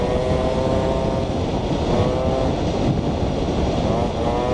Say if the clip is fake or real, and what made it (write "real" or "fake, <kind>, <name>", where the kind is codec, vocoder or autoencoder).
real